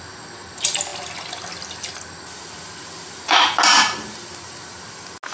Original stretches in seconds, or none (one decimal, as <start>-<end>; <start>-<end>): 0.0-5.3